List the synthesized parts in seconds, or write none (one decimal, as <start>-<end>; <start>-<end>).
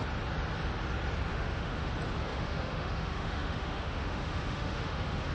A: 1.3-1.9; 2.3-5.3